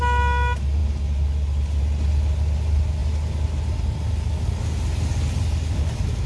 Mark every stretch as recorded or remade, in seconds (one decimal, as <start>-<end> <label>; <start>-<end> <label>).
0.0-6.3 recorded